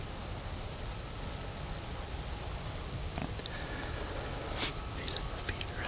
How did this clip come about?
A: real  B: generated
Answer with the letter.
A